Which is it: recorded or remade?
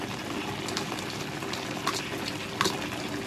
recorded